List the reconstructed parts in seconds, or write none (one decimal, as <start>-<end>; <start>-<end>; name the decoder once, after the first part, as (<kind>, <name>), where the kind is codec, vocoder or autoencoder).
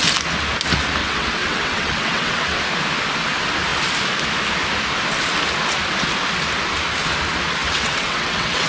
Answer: 1.0-2.6 (vocoder, WaveNeXt); 7.6-8.7